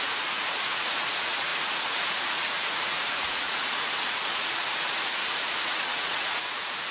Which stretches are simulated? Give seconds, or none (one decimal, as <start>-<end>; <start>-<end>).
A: 0.0-6.9